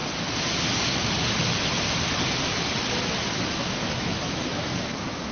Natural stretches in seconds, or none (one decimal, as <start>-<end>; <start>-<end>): 0.0-3.2